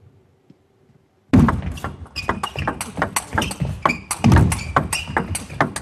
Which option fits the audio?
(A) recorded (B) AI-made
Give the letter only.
A